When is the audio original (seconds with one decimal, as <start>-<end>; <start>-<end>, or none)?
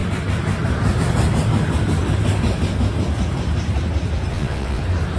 0.0-4.3; 4.8-5.2